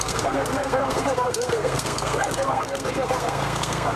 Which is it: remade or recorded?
remade